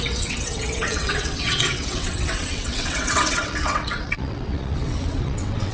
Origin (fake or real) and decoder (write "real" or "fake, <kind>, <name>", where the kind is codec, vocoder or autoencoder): fake, vocoder, WaveNeXt